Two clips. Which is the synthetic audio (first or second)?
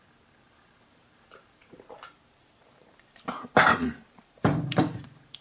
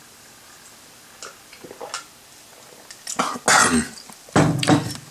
first